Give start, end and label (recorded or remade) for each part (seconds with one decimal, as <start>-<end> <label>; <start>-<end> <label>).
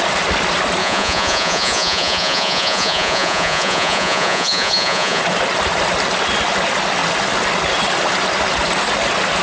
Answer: 0.0-0.8 recorded; 0.8-5.2 remade; 5.2-9.4 recorded